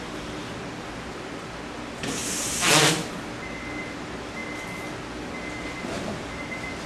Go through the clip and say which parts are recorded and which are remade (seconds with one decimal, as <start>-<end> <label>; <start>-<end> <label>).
0.0-6.9 recorded